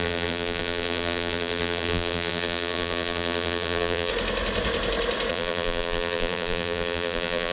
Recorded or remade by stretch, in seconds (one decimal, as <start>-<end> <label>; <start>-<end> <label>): 0.0-4.1 remade; 4.1-5.3 recorded; 5.3-7.5 remade